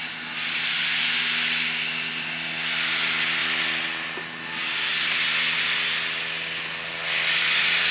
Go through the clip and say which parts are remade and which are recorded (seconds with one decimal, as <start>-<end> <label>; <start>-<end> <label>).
0.0-7.9 recorded